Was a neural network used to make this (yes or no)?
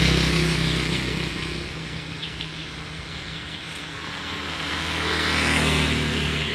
yes